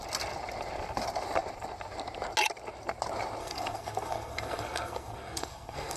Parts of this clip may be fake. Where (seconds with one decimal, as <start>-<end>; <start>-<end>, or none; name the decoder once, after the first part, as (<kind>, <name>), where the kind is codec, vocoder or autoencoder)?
3.4-6.0 (codec, SNAC)